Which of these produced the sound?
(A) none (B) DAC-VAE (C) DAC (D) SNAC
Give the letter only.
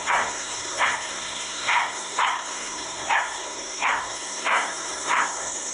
D